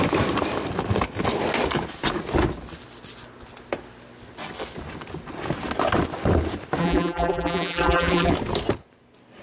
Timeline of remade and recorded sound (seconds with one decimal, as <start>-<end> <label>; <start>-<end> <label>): 0.0-6.8 recorded; 6.8-8.3 remade; 8.3-9.4 recorded